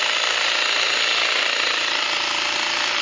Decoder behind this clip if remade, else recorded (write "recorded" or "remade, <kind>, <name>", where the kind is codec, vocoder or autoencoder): recorded